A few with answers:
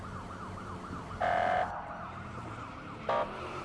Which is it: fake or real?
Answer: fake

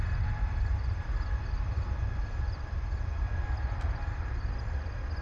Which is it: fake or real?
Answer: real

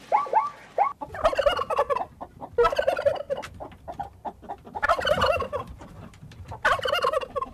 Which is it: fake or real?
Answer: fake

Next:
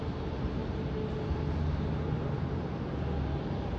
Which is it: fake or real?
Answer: real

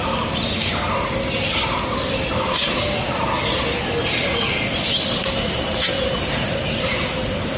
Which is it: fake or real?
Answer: real